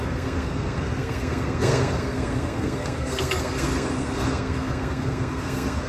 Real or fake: fake